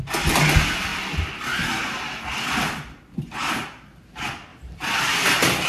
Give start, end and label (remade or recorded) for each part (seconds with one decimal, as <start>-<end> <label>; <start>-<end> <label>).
0.0-4.5 recorded; 4.5-5.3 remade; 5.3-5.7 recorded